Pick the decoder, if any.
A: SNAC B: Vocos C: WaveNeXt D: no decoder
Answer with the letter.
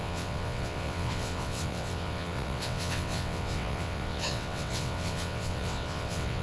C